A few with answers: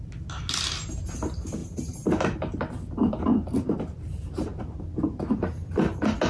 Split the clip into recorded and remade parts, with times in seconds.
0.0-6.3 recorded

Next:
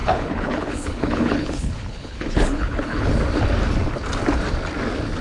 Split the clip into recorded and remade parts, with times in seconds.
0.0-3.1 remade; 3.1-5.2 recorded

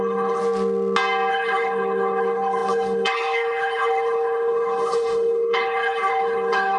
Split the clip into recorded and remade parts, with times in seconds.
0.0-0.4 remade; 0.4-1.3 recorded; 1.3-6.8 remade

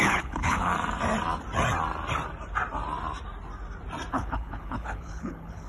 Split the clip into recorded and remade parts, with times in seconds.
0.0-0.7 remade; 0.7-4.1 recorded; 4.1-5.7 remade

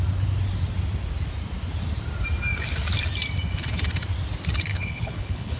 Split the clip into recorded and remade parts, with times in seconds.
0.0-4.7 recorded; 4.7-5.6 remade